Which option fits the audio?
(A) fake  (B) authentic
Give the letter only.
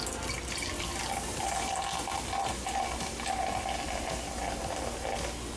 B